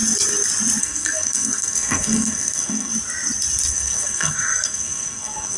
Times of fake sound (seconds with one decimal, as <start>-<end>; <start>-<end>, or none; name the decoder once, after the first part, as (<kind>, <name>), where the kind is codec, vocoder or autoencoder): 0.8-2.9 (codec, SNAC); 3.7-5.6